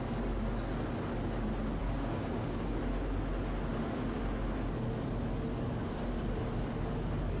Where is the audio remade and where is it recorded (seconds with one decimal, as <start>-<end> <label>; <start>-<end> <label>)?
0.0-1.8 recorded; 1.8-2.8 remade; 2.8-3.7 recorded; 3.7-4.2 remade; 4.2-7.4 recorded

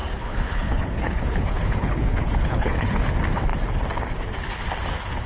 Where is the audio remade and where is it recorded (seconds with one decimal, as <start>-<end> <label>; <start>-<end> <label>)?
0.0-3.1 remade; 3.1-5.3 recorded

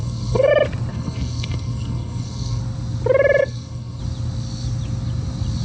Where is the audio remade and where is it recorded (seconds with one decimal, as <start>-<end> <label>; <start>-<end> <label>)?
0.0-0.5 remade; 0.5-0.9 recorded; 0.9-2.6 remade; 2.6-3.4 recorded; 3.4-4.0 remade; 4.0-5.6 recorded

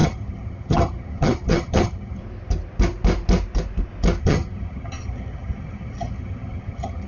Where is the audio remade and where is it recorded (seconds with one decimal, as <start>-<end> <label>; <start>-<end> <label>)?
0.0-2.2 remade; 2.2-4.2 recorded; 4.2-7.1 remade

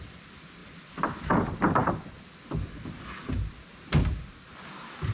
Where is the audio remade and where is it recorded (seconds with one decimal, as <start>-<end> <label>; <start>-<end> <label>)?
0.0-0.6 recorded; 0.6-1.2 remade; 1.2-5.1 recorded

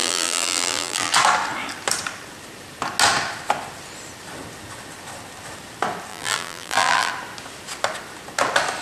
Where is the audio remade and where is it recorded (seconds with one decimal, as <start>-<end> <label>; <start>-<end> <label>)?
0.0-1.1 remade; 1.1-6.1 recorded; 6.1-7.1 remade; 7.1-8.8 recorded

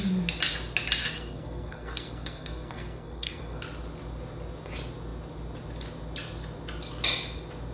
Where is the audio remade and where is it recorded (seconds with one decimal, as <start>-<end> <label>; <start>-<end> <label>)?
0.0-1.0 recorded; 1.0-3.6 remade; 3.6-7.7 recorded

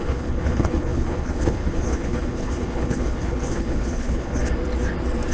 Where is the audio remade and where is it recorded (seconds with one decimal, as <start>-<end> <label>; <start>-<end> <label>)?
0.0-4.4 remade; 4.4-5.3 recorded